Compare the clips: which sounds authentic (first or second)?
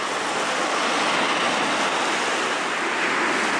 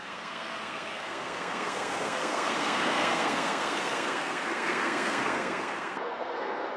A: first